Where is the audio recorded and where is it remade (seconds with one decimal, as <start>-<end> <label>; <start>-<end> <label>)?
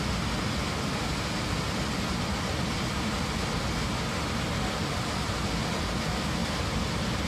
0.0-7.3 recorded